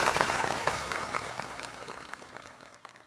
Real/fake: fake